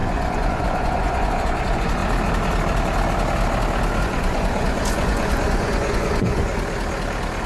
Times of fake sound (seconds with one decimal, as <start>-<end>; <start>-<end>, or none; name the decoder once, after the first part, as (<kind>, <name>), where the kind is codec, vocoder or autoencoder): 0.0-2.0 (vocoder, Vocos); 4.0-6.5